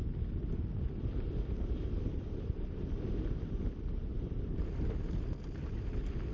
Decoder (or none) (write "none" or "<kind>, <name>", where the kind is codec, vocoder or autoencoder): none